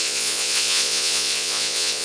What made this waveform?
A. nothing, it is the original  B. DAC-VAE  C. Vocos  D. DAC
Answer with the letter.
C